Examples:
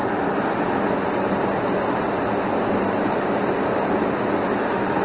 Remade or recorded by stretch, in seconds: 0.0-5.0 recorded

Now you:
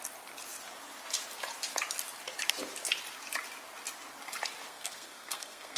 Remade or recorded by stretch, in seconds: 0.0-4.7 recorded; 4.7-5.8 remade

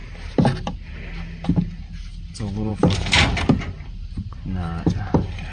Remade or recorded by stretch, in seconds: 0.0-5.5 recorded

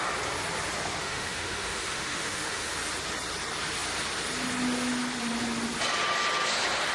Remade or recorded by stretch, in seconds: 0.0-1.0 recorded; 1.0-2.7 remade; 2.7-6.9 recorded

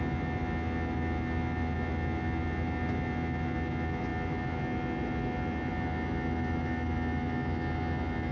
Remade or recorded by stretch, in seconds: 0.0-8.3 recorded

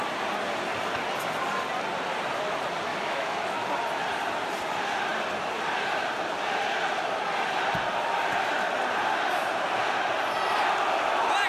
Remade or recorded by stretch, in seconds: 0.0-2.9 recorded; 2.9-3.7 remade; 3.7-11.5 recorded